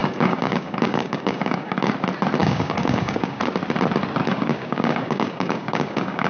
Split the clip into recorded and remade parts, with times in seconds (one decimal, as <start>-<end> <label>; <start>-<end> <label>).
0.0-1.9 remade; 1.9-2.4 recorded; 2.4-3.4 remade; 3.4-4.2 recorded; 4.2-6.3 remade